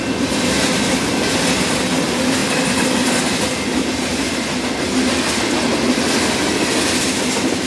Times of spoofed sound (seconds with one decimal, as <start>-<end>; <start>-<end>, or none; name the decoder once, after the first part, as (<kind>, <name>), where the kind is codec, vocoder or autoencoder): none